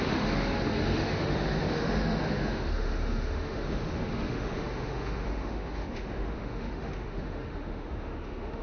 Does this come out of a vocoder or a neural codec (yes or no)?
yes